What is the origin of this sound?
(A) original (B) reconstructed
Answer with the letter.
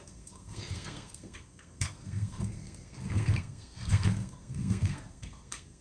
B